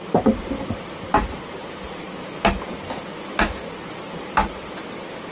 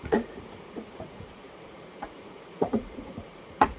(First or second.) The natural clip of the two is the first